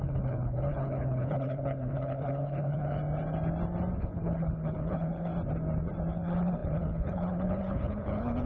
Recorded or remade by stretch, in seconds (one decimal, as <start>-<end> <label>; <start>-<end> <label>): 0.0-3.0 remade; 3.0-4.0 recorded; 4.0-5.3 remade; 5.3-6.1 recorded; 6.1-8.5 remade